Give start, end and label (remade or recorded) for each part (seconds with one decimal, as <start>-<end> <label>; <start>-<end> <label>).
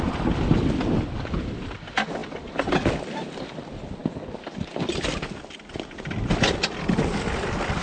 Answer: 0.0-7.8 recorded